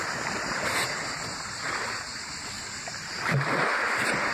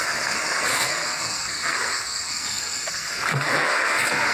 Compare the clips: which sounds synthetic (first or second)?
second